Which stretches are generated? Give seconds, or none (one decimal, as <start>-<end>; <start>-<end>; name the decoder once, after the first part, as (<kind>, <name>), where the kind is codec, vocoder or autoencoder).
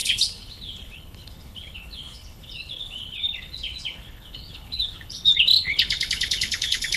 0.0-7.0 (codec, HILCodec)